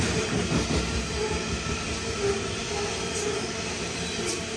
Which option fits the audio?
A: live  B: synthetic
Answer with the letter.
A